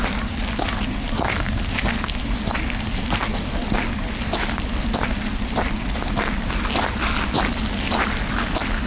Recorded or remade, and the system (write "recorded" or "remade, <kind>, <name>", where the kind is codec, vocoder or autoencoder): recorded